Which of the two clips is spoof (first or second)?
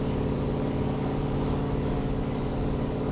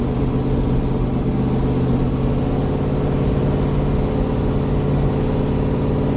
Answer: first